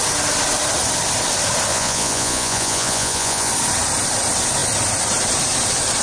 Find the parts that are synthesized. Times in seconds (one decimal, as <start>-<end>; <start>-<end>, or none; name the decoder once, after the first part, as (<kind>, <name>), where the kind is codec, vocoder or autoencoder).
1.7-3.5 (vocoder, Vocos)

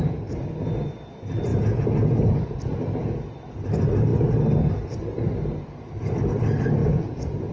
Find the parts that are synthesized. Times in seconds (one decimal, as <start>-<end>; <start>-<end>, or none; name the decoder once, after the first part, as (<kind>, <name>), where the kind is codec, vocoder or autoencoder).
1.5-2.6 (vocoder, Vocos); 6.8-7.5

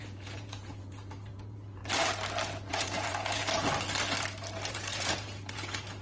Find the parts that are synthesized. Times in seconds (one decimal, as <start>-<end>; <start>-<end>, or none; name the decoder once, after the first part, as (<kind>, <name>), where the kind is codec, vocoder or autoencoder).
0.0-1.8 (vocoder, Vocos); 2.7-3.4; 4.7-6.0